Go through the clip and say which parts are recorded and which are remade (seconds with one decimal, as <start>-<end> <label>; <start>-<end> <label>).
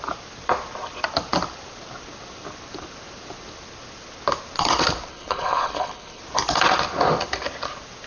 0.0-5.1 recorded; 5.1-6.2 remade; 6.2-8.1 recorded